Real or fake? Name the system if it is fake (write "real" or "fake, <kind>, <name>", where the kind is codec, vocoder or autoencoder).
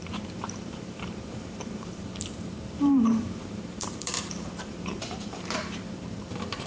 fake, vocoder, BigVGAN v2